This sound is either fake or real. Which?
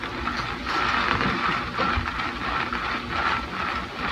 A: real